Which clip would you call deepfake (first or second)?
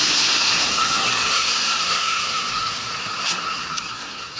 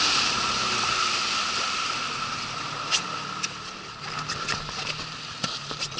first